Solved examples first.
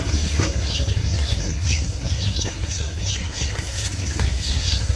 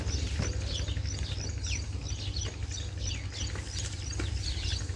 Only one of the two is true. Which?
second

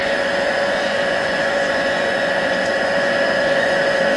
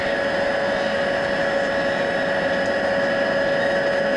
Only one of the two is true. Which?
second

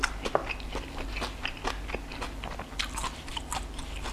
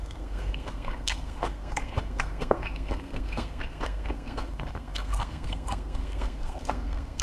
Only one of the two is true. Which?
first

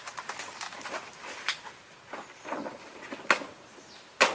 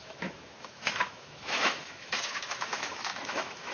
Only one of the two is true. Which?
first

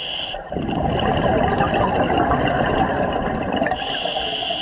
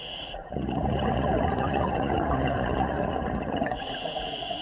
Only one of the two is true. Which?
first